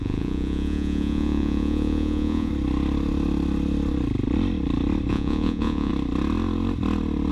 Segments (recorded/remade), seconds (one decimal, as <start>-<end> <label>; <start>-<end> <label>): 0.0-2.5 remade; 2.5-5.1 recorded; 5.1-5.9 remade; 5.9-7.3 recorded